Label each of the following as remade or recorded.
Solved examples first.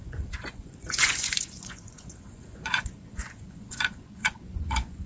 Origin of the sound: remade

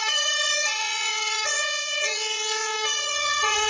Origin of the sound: remade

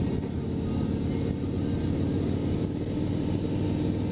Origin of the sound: recorded